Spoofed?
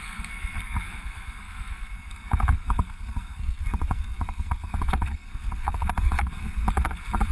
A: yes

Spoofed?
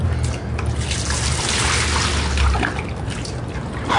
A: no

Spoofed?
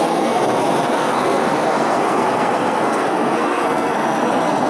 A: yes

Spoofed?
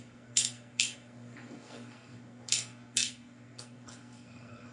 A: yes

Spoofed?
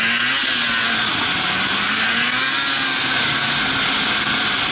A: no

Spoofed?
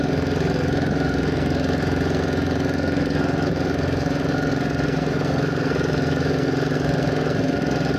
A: yes